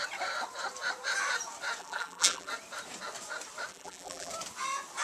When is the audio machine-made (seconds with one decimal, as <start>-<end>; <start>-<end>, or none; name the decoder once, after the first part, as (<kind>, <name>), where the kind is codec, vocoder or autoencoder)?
1.8-2.5 (vocoder, BigVGAN v2); 3.7-4.3